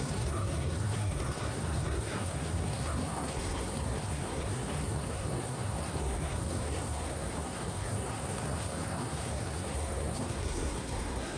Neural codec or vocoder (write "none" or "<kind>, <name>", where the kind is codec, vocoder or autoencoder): codec, SNAC